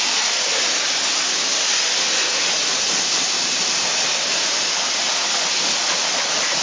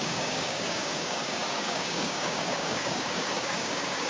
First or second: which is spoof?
second